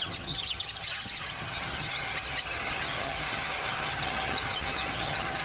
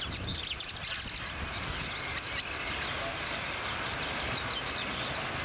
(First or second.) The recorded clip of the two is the second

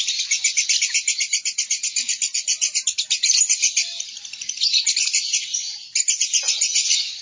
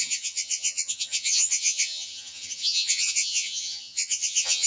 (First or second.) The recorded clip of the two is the first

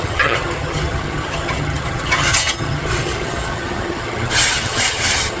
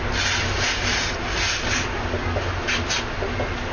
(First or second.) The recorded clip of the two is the second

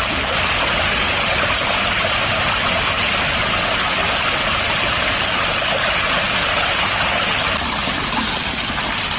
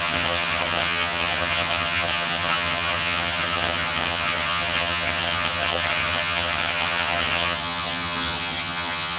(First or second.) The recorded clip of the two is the first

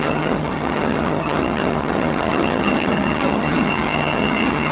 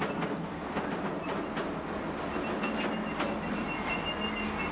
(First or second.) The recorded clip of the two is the second